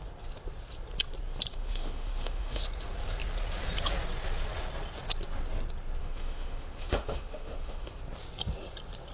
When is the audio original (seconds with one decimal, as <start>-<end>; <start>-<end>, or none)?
0.0-1.5; 2.6-6.0; 8.0-9.1